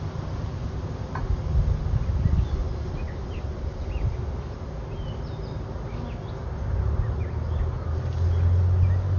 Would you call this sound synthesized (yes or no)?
no